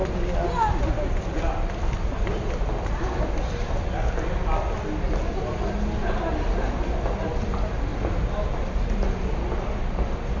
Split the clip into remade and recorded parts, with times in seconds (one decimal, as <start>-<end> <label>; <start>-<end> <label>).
0.0-10.4 recorded